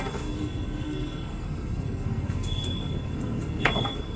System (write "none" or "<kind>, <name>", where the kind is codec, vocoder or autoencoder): codec, SNAC